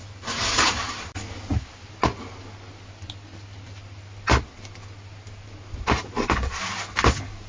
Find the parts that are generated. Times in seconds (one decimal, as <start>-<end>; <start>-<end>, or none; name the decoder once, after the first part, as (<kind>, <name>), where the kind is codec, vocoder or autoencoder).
none